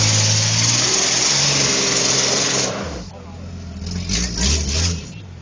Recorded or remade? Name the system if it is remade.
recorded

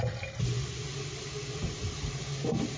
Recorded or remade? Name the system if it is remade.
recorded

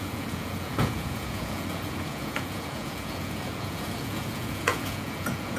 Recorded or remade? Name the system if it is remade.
remade, vocoder, Vocos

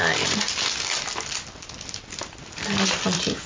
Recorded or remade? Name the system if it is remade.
recorded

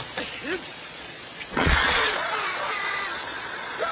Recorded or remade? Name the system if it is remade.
remade, vocoder, Vocos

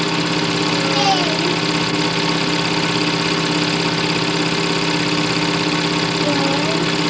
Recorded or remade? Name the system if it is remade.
recorded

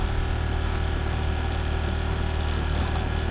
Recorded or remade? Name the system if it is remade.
recorded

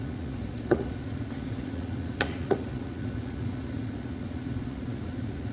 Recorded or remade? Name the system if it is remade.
remade, vocoder, Vocos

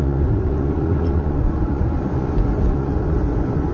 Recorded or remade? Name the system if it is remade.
remade, vocoder, Vocos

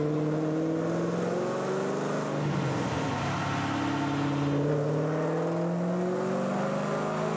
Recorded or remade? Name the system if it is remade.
recorded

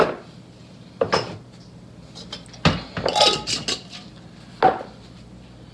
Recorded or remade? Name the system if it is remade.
recorded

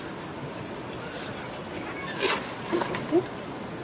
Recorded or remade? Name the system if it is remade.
recorded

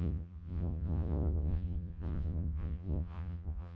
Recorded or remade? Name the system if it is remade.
remade, vocoder, Vocos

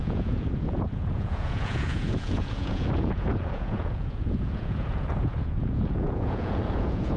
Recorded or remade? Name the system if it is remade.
remade, vocoder, Vocos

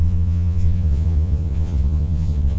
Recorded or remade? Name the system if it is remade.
remade, vocoder, Vocos